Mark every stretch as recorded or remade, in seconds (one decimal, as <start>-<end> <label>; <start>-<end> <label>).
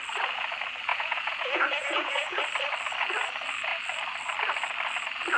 0.0-0.9 recorded; 0.9-2.4 remade; 2.4-5.4 recorded